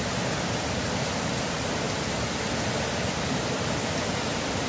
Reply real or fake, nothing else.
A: real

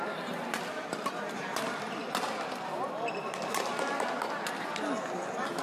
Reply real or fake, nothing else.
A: real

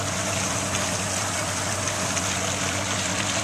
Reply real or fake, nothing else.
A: real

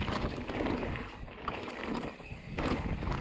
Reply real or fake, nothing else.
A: fake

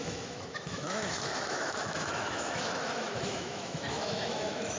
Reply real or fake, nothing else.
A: fake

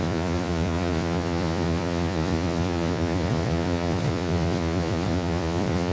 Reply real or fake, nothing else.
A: fake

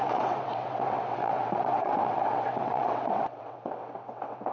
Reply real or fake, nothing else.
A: fake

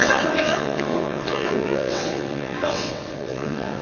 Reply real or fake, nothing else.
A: fake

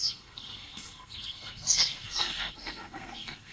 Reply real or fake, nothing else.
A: fake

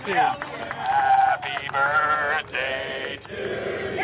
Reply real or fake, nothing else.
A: real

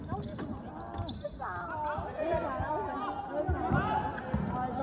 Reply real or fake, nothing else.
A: real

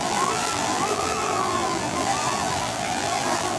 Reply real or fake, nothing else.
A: fake